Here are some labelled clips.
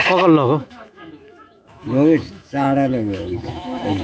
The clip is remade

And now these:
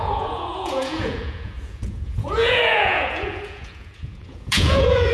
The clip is remade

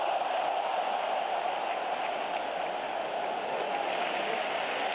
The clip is recorded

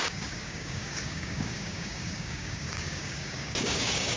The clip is remade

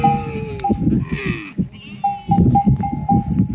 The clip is recorded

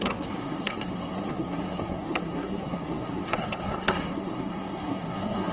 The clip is remade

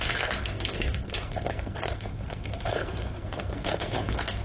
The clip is remade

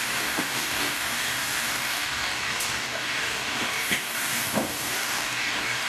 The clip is remade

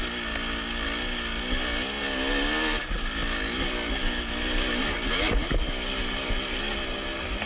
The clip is recorded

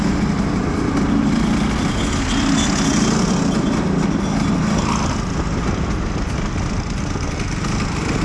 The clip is recorded